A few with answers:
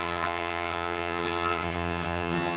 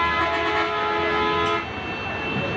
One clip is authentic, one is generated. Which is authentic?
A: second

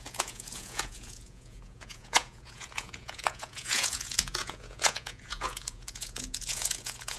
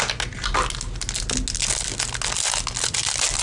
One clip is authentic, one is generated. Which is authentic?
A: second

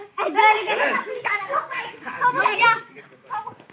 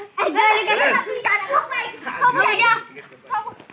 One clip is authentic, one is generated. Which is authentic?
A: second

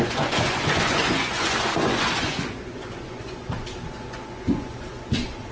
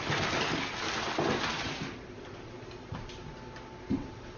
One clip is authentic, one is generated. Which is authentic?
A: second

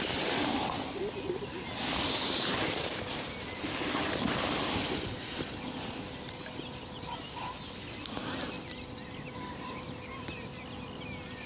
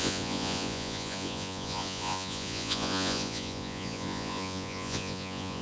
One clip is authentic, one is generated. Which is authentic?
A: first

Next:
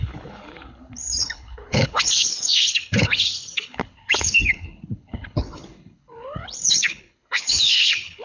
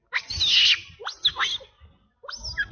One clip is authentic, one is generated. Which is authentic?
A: second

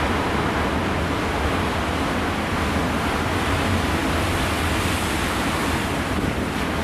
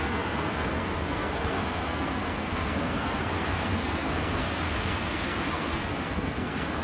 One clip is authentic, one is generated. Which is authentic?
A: first